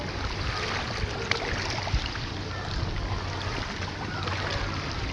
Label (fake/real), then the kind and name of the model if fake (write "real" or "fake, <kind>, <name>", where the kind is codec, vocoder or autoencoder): real